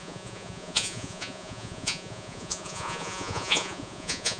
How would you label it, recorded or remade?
remade